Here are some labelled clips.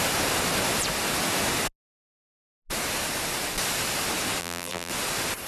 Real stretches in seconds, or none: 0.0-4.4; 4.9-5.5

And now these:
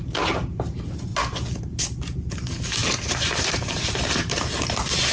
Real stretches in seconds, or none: 1.1-1.6